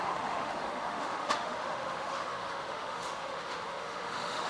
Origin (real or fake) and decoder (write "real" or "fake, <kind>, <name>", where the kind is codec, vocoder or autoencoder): fake, autoencoder, DAC-VAE